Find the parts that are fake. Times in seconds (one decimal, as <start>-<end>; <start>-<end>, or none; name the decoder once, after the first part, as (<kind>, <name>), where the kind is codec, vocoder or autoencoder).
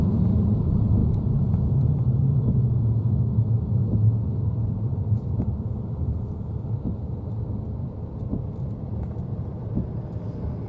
1.0-3.1 (vocoder, Vocos)